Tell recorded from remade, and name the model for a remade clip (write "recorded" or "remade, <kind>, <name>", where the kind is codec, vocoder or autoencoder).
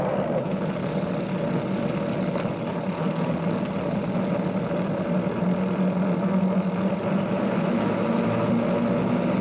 recorded